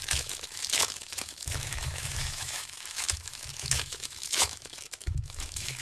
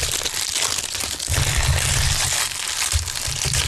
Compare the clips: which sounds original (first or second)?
second